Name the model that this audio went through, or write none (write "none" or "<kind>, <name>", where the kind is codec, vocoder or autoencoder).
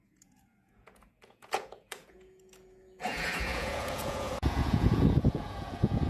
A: vocoder, Vocos